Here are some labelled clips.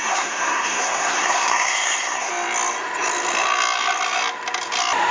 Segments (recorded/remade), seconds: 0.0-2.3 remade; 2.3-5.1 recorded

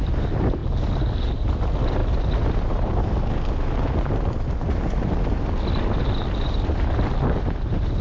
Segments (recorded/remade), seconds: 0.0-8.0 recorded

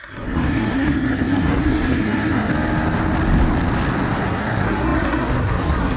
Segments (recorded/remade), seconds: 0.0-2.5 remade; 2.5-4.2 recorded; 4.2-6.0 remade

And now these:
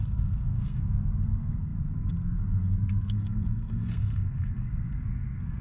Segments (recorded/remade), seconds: 0.0-5.6 remade

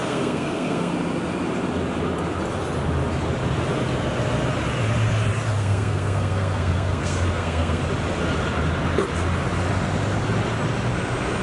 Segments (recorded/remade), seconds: 0.0-0.9 remade; 0.9-5.6 recorded; 5.6-7.8 remade; 7.8-11.4 recorded

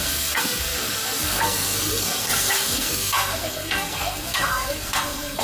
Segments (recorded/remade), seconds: 0.0-5.4 remade

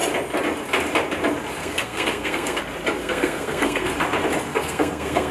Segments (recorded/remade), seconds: 0.0-1.6 recorded; 1.6-2.6 remade; 2.6-3.0 recorded; 3.0-3.9 remade; 3.9-4.5 recorded; 4.5-5.3 remade